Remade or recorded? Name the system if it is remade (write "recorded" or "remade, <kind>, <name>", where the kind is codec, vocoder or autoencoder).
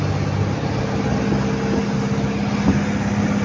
recorded